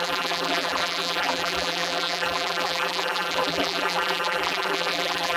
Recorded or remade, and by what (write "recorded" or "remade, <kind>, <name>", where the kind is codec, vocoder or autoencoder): remade, vocoder, BigVGAN v2